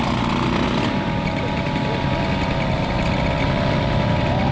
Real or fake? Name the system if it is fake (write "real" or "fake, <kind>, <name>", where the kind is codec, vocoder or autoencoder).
real